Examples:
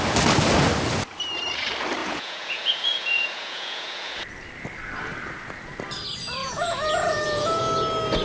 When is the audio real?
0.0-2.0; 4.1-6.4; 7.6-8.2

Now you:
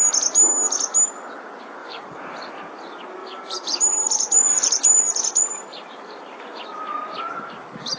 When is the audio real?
0.0-1.8; 2.6-3.2; 6.8-8.0

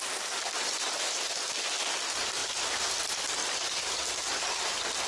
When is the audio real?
0.0-5.1

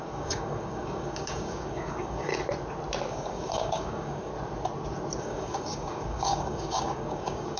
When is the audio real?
2.3-3.1; 4.3-5.2

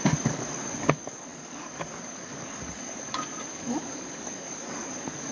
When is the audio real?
none